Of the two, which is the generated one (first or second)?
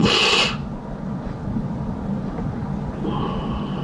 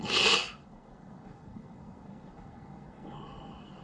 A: second